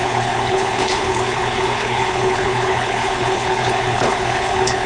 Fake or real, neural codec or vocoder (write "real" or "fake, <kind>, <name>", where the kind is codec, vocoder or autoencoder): fake, codec, HILCodec